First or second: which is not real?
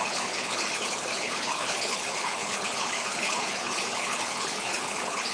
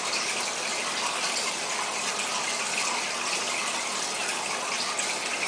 first